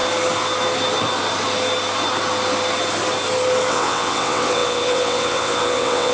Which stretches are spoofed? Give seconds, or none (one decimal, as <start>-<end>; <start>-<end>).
3.7-6.1